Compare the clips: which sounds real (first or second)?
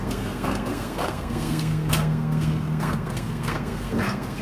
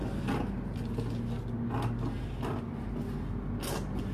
second